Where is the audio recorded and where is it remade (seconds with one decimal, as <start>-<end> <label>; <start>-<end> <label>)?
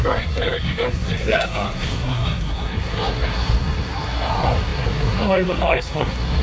0.0-6.4 remade